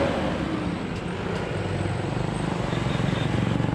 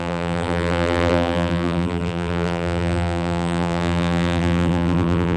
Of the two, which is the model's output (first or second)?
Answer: second